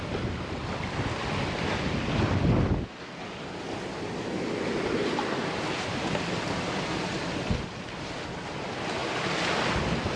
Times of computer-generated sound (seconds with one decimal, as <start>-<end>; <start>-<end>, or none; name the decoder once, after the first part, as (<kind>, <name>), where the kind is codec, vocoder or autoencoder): none